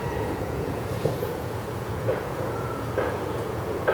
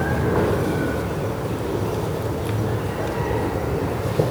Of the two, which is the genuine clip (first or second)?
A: second